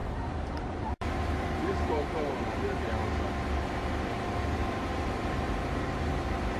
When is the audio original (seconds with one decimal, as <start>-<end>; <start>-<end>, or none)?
3.0-3.9